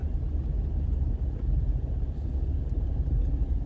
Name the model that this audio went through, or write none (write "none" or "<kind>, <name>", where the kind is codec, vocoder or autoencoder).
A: none